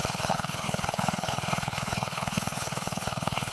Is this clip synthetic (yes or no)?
yes